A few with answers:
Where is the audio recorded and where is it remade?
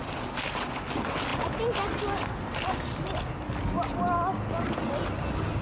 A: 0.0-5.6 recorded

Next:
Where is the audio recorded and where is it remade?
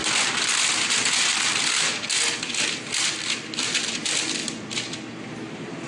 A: 0.0-5.9 recorded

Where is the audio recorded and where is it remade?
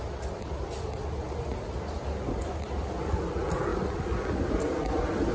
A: 0.0-5.3 recorded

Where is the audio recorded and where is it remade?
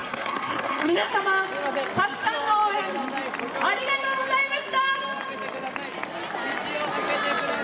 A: 0.0-1.1 remade; 1.1-7.6 recorded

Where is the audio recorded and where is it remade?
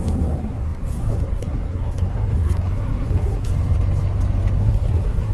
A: 0.0-3.5 remade; 3.5-4.6 recorded; 4.6-5.3 remade